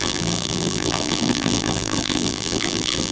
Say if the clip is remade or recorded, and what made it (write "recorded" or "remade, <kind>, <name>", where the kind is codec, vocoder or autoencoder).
remade, vocoder, BigVGAN v2